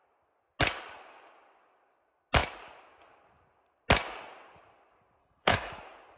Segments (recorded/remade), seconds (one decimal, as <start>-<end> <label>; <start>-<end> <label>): 0.0-5.2 recorded; 5.2-5.7 remade; 5.7-6.2 recorded